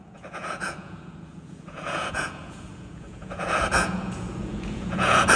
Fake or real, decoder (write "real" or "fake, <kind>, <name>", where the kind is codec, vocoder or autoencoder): fake, vocoder, Vocos